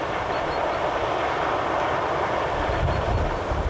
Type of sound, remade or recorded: recorded